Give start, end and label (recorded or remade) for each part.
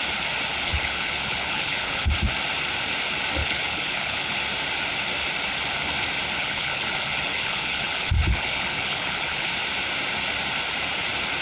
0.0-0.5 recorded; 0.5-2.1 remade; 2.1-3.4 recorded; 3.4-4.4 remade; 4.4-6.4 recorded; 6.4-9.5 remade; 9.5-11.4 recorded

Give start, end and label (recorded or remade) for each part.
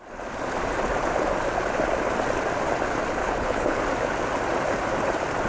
0.0-3.2 recorded; 3.2-3.8 remade; 3.8-5.5 recorded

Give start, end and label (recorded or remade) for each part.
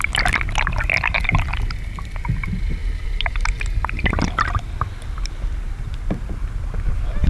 0.0-7.3 recorded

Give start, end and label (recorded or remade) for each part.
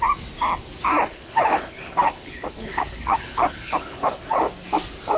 0.0-1.1 recorded; 1.1-4.2 remade; 4.2-5.2 recorded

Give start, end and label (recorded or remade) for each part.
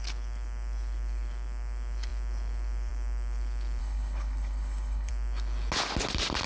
0.0-3.8 recorded; 3.8-5.1 remade; 5.1-6.5 recorded